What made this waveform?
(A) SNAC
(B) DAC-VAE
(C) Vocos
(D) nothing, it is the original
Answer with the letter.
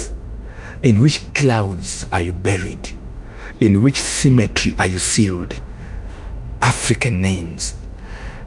B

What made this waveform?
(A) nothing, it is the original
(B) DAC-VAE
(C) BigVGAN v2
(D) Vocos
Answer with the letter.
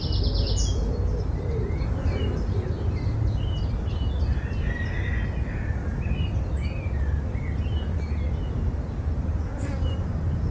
A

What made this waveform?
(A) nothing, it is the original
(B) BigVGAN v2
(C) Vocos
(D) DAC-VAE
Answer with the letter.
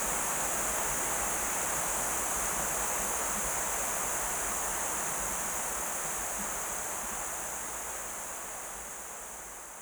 A